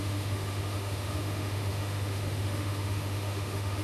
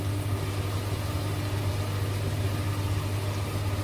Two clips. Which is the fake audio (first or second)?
first